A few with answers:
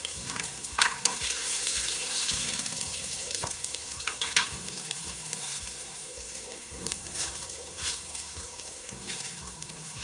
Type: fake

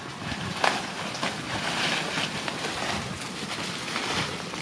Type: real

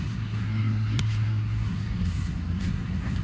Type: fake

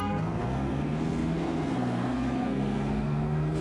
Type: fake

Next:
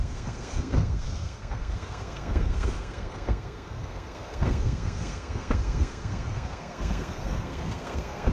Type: fake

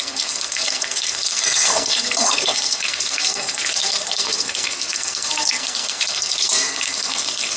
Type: fake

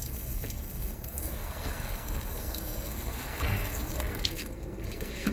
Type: fake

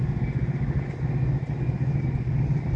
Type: real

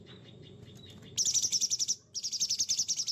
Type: real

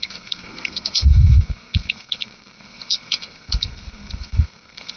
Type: fake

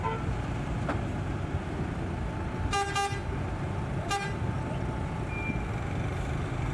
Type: real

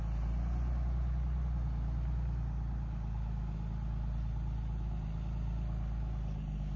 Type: real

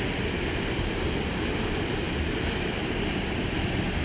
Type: real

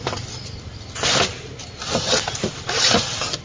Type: real